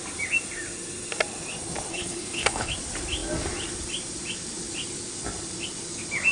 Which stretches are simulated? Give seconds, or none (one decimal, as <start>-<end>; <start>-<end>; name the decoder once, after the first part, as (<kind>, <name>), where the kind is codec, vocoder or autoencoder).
1.9-2.7 (codec, HILCodec)